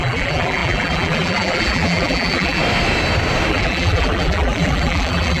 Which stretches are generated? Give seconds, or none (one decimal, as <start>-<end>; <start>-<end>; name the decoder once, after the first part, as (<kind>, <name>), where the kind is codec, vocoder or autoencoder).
0.0-2.6 (vocoder, BigVGAN v2); 3.5-5.4